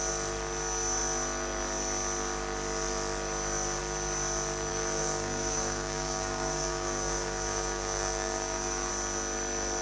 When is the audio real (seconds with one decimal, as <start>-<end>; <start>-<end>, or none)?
0.0-4.7; 8.9-9.8